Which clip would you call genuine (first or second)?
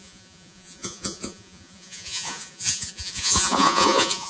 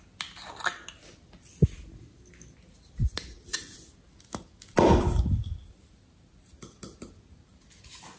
second